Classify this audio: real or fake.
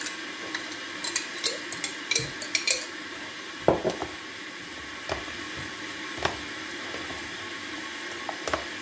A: real